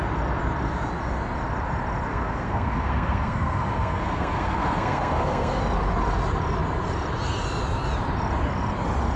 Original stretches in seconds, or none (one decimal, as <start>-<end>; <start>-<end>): 0.0-2.1; 5.6-9.2